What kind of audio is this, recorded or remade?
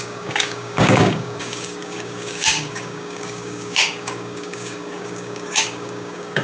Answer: remade